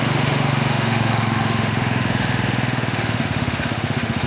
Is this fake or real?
fake